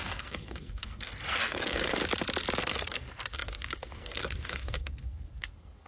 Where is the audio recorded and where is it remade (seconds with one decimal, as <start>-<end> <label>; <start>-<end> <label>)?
0.0-2.0 remade; 2.0-2.6 recorded; 2.6-5.9 remade